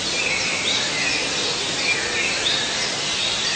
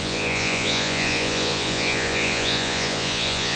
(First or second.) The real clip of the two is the first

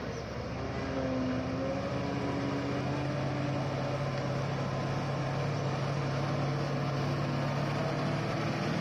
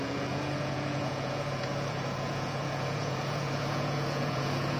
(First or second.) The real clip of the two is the first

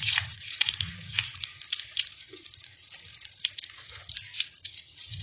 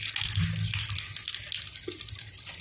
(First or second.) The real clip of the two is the second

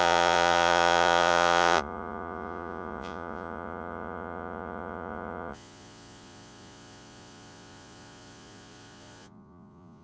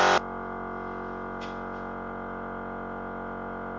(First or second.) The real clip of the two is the second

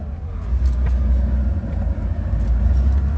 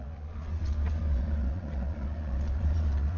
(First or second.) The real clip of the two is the first